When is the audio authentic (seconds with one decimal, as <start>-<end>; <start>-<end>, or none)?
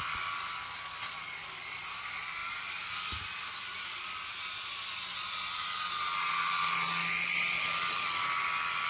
0.0-8.9